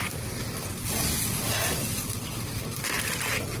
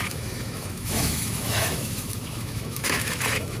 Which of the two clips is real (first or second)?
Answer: first